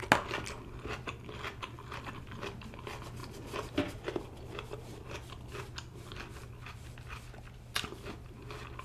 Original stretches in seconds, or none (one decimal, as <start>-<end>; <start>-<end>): 0.0-8.8